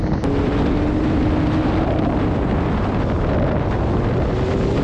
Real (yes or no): yes